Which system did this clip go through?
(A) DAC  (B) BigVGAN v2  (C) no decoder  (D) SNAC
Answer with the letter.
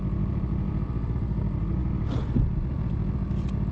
B